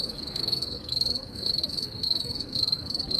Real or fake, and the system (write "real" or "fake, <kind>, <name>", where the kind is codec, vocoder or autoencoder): fake, codec, SNAC